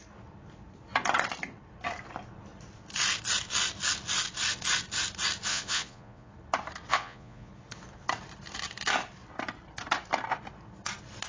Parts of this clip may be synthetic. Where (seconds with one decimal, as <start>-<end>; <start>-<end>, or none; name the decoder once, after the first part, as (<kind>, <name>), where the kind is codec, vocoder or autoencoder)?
5.5-6.3 (vocoder, Vocos); 6.9-7.5